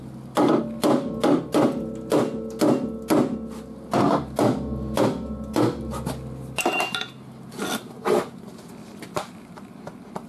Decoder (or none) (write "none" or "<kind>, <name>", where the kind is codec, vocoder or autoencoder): none